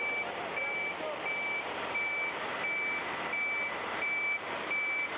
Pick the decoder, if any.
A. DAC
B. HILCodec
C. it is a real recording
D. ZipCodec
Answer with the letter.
C